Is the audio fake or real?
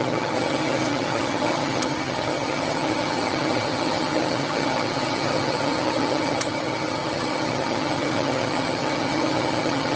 fake